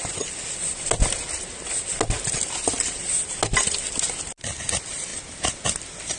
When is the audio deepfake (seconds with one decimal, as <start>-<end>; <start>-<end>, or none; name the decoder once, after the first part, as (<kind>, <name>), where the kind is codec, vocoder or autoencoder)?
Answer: none